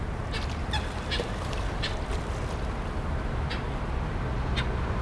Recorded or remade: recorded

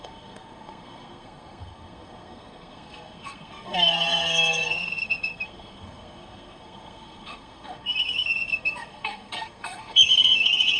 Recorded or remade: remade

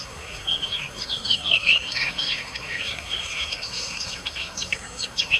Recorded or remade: remade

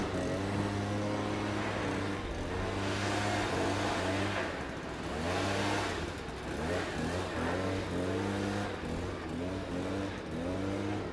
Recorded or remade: recorded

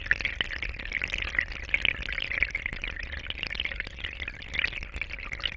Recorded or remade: recorded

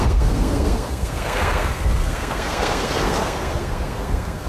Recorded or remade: remade